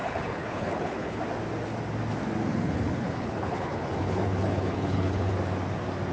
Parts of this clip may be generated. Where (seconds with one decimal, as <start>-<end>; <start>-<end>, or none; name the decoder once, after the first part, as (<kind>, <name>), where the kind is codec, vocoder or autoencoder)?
0.0-1.2 (codec, HILCodec); 2.5-5.3